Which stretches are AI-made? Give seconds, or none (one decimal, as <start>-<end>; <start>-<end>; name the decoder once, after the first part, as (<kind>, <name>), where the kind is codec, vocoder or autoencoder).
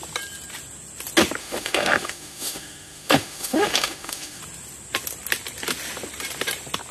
1.4-4.4 (autoencoder, DAC-VAE)